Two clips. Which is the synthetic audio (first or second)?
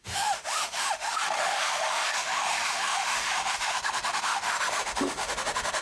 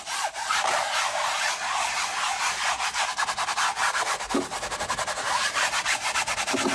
first